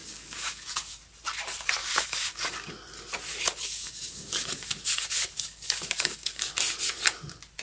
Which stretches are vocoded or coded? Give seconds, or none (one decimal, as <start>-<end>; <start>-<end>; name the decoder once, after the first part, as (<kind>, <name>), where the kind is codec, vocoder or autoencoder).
0.0-1.0 (codec, DAC); 1.8-2.7; 3.3-6.6